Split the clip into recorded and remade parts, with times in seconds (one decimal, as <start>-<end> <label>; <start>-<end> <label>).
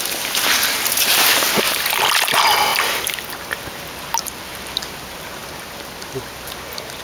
0.0-7.0 recorded